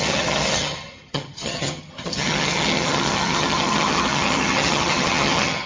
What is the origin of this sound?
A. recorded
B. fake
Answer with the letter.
B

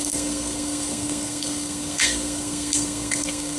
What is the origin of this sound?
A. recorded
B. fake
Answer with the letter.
B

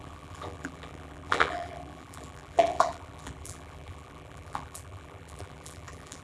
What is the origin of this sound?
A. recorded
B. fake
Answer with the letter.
B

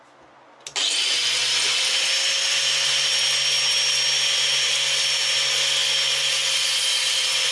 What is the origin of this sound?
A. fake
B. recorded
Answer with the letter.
B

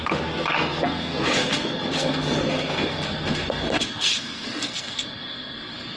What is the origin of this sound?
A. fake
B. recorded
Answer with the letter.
A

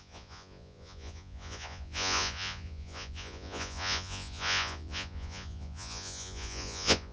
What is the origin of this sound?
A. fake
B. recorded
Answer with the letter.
A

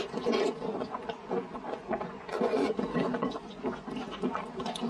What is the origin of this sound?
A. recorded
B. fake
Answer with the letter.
B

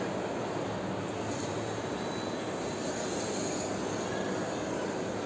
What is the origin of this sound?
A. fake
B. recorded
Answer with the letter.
B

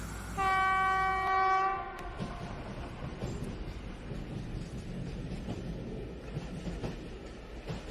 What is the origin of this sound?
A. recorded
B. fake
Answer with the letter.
A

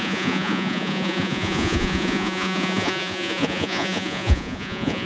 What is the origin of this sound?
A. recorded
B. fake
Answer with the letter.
B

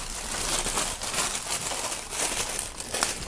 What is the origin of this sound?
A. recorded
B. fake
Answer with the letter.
A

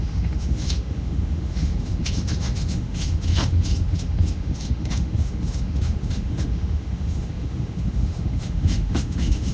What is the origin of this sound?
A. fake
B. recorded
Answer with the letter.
A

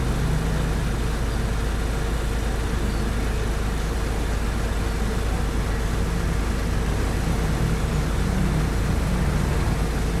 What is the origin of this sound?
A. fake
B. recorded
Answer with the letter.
B